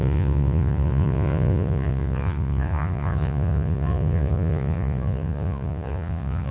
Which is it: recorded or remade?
remade